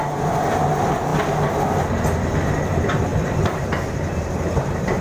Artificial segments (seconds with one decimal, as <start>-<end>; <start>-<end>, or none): 3.1-3.7